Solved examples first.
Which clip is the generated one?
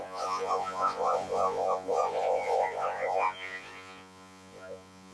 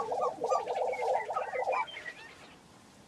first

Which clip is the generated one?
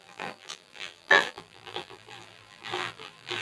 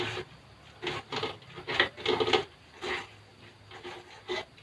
first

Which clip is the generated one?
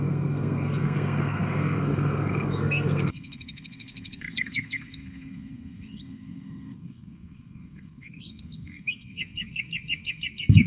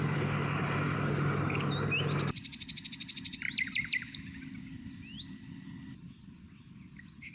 first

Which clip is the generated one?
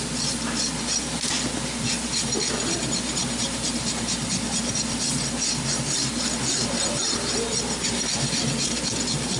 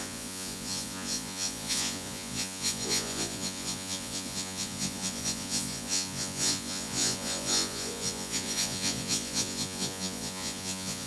second